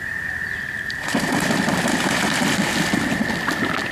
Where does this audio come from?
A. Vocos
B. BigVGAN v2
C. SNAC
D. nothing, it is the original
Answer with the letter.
D